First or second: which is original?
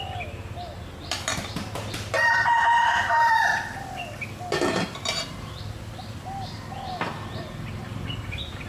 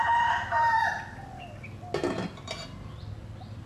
second